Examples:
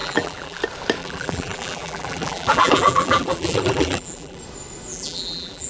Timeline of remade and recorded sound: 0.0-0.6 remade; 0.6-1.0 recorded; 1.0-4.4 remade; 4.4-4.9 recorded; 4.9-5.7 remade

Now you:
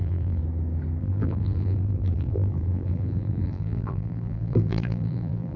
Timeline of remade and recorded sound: 0.0-0.4 remade; 0.4-1.0 recorded; 1.0-5.6 remade

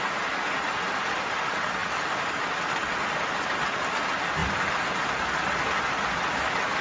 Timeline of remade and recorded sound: 0.0-1.8 recorded; 1.8-2.6 remade; 2.6-6.8 recorded

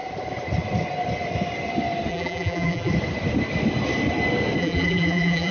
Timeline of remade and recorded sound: 0.0-2.1 recorded; 2.1-2.9 remade; 2.9-4.6 recorded; 4.6-5.5 remade